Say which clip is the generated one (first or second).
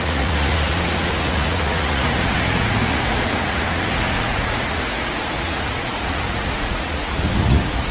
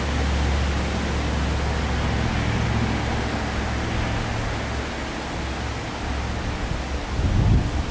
first